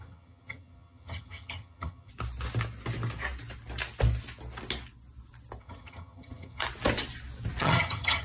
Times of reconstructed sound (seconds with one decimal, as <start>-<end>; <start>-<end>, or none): 0.0-2.1; 5.6-6.6; 7.6-8.2